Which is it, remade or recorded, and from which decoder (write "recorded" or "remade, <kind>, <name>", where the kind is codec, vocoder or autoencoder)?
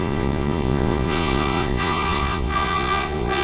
remade, vocoder, Vocos